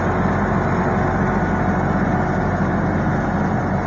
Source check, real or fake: real